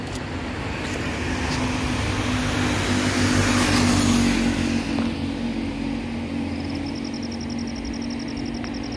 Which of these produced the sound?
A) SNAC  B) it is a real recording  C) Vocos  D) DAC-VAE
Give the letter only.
B